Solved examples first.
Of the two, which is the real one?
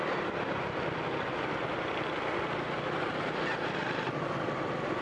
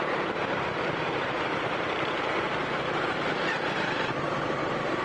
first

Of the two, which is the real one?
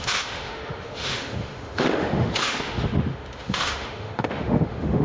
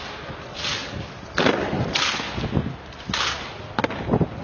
second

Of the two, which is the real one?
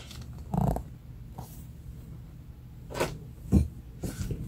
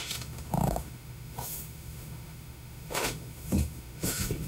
first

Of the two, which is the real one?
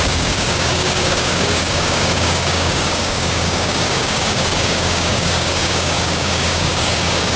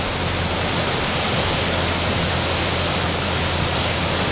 second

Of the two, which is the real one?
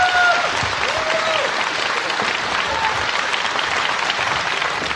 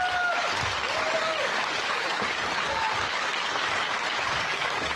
first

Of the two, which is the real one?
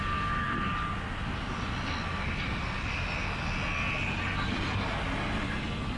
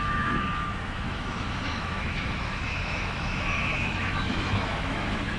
first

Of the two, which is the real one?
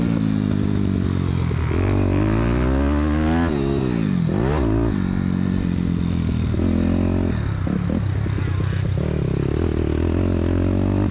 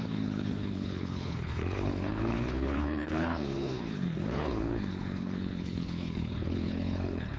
first